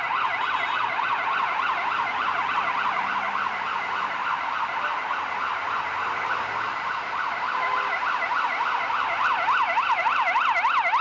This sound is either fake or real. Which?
real